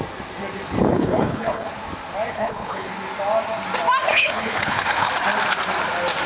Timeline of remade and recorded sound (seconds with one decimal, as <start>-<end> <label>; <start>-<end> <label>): 0.0-0.8 recorded; 0.8-1.7 remade; 1.7-2.3 recorded; 2.3-2.9 remade; 2.9-4.1 recorded; 4.1-5.1 remade; 5.1-6.3 recorded